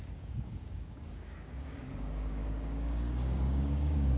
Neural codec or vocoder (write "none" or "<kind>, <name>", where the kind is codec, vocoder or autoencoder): codec, DAC